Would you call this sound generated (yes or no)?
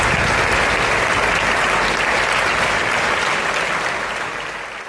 no